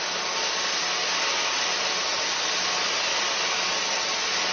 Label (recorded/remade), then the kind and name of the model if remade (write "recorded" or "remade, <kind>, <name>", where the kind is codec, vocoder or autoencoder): recorded